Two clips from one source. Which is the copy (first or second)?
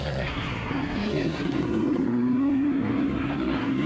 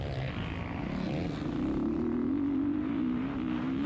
first